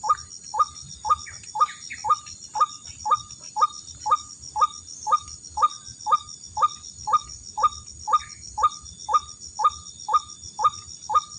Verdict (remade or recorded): recorded